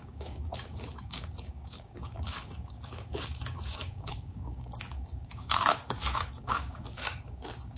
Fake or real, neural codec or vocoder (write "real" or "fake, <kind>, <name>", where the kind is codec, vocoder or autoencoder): fake, codec, DAC